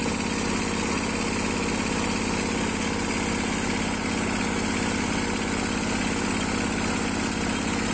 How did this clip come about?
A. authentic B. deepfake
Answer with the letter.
A